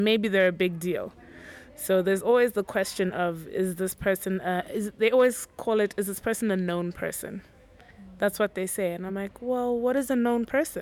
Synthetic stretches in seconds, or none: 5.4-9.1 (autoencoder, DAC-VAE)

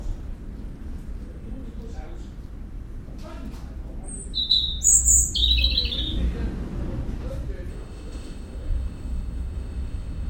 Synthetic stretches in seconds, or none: 7.7-10.3 (autoencoder, DAC-VAE)